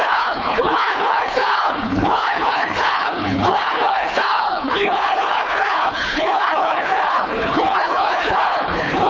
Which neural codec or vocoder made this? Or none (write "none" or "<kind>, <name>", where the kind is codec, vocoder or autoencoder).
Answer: codec, HILCodec